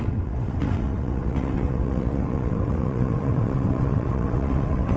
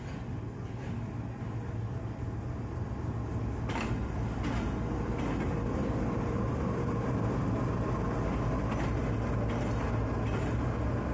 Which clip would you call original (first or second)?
second